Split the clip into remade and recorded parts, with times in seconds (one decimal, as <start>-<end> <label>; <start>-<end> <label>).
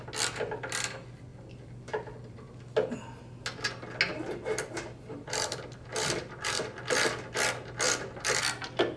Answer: 0.0-4.1 recorded; 4.1-6.3 remade; 6.3-9.0 recorded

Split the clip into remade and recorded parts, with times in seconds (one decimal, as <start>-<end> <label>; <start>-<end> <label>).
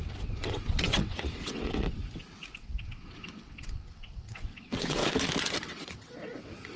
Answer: 0.0-2.0 remade; 2.0-2.6 recorded; 2.6-5.0 remade; 5.0-5.5 recorded; 5.5-6.8 remade